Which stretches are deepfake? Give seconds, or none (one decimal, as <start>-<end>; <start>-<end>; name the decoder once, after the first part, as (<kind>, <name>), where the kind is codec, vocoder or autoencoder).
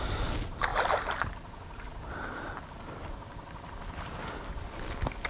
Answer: none